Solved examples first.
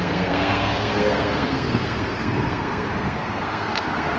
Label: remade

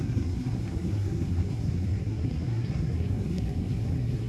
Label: remade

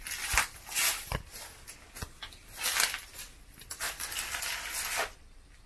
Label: recorded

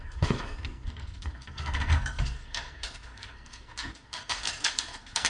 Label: remade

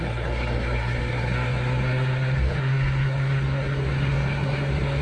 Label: remade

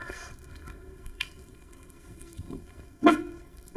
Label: remade